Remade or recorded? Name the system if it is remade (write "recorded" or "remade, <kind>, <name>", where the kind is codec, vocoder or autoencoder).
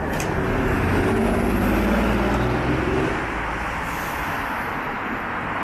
recorded